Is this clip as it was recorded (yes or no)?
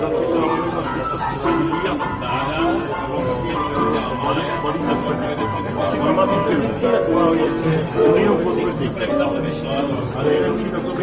no